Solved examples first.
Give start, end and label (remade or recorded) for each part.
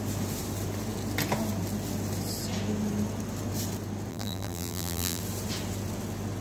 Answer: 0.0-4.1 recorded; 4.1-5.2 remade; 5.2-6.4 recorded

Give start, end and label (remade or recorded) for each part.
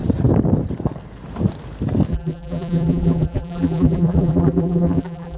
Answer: 0.0-2.1 recorded; 2.1-5.4 remade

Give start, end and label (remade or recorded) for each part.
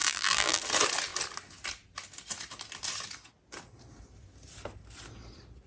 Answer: 0.0-0.6 remade; 0.6-5.7 recorded